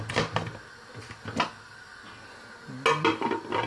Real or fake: real